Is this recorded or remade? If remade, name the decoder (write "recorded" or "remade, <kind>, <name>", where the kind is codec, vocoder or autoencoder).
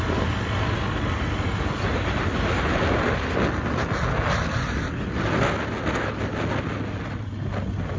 recorded